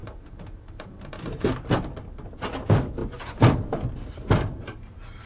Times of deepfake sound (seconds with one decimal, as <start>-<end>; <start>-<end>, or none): 0.0-1.5; 3.0-5.3

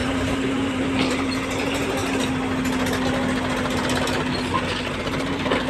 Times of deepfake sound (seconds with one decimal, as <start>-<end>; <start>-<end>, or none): 0.0-2.0; 5.0-5.7

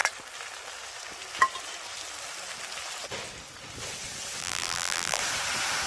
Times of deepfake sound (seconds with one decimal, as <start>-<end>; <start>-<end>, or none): 4.4-5.2

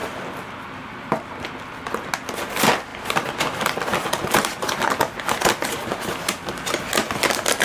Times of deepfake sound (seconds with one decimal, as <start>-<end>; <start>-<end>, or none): 2.5-2.9

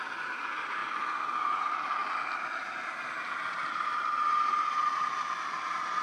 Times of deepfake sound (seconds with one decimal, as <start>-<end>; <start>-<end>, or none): 0.0-0.8; 1.4-2.0; 2.6-6.0